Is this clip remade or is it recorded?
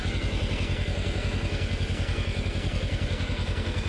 remade